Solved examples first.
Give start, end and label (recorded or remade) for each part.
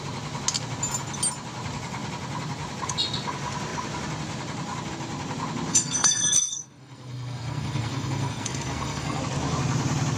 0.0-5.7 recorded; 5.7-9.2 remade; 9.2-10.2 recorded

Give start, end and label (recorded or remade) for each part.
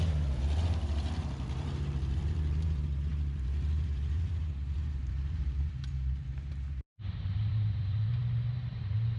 0.0-8.2 remade; 8.2-8.7 recorded; 8.7-9.2 remade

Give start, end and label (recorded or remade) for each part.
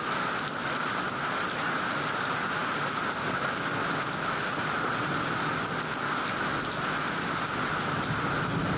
0.0-8.8 recorded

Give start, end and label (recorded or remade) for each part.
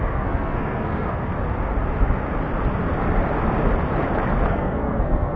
0.0-1.3 remade; 1.3-4.5 recorded; 4.5-5.4 remade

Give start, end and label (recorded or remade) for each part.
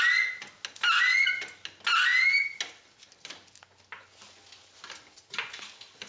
0.0-6.1 recorded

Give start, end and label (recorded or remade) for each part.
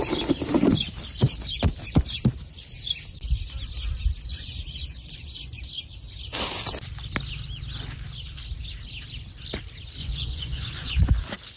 0.0-4.3 recorded; 4.3-5.7 remade; 5.7-10.0 recorded; 10.0-11.0 remade; 11.0-11.6 recorded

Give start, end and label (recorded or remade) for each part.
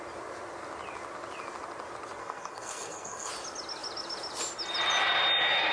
0.0-2.2 recorded; 2.2-3.3 remade; 3.3-5.7 recorded